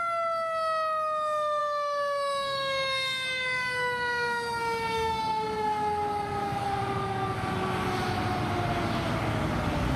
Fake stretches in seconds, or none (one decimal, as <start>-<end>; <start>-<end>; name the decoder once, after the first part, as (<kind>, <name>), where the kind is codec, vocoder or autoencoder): 1.6-6.8 (codec, DAC)